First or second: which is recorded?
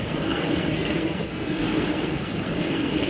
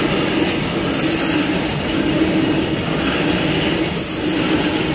second